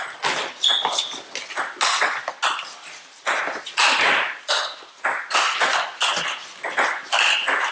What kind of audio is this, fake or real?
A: real